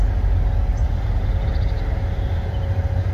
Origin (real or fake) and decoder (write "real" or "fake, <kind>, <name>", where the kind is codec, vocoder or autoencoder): real